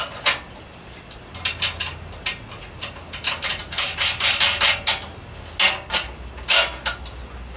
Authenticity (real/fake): real